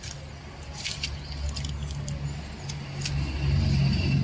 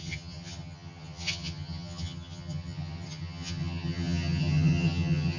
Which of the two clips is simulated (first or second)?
second